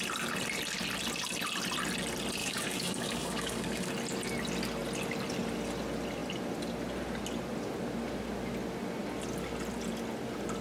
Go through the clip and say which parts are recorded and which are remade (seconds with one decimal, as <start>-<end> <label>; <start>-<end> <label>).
0.0-2.4 recorded; 2.4-3.9 remade; 3.9-10.6 recorded